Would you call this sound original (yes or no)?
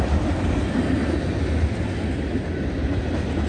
yes